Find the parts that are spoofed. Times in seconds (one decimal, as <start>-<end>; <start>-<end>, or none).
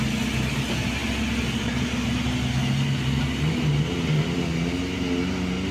none